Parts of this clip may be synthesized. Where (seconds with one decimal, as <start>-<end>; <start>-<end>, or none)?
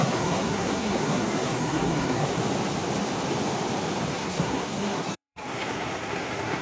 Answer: 0.0-2.4; 4.1-6.6